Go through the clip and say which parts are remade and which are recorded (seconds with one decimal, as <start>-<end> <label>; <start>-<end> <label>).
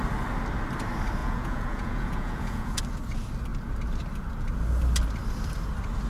0.0-1.2 recorded; 1.2-2.8 remade; 2.8-6.1 recorded